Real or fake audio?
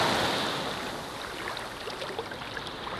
real